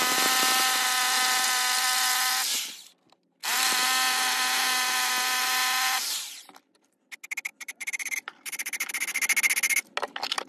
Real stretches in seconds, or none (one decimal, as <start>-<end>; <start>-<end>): 0.0-7.5; 8.9-10.5